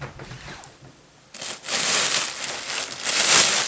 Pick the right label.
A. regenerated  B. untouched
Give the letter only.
B